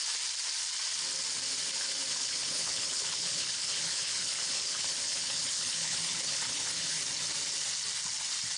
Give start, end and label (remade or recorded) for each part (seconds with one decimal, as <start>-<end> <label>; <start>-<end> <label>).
0.0-2.1 recorded; 2.1-7.0 remade; 7.0-8.6 recorded